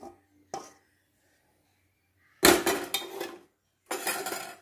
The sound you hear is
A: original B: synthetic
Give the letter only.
A